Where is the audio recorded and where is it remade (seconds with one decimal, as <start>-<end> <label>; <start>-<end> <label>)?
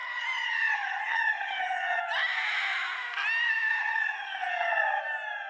0.0-2.0 remade; 2.0-3.7 recorded; 3.7-5.0 remade; 5.0-5.5 recorded